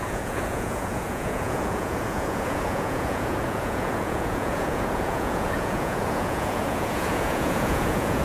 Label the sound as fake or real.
fake